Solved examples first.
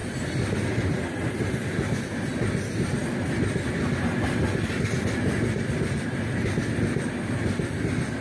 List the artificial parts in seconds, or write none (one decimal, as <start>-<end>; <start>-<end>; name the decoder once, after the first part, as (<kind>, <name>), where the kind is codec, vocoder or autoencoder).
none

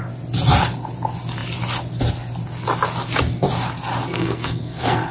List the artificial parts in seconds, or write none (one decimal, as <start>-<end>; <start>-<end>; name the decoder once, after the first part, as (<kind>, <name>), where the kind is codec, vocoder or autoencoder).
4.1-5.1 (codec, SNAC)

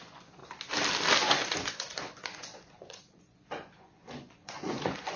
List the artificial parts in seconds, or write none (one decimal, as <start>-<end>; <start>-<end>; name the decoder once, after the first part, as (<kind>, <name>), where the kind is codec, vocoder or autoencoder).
0.0-0.4 (vocoder, Vocos); 1.2-5.2